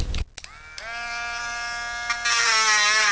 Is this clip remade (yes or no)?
no